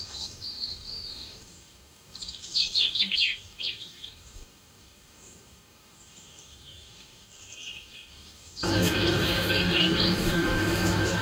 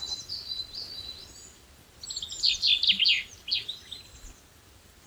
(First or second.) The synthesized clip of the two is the first